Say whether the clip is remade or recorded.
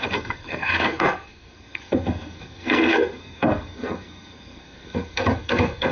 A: remade